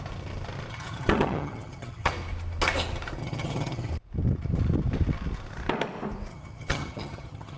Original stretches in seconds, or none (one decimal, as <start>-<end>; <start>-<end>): 0.0-0.7; 2.1-3.2; 3.9-6.3